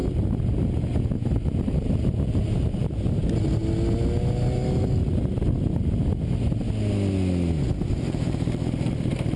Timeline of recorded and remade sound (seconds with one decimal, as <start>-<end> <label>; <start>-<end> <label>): 0.0-1.6 recorded; 1.6-3.2 remade; 3.2-7.9 recorded; 7.9-9.4 remade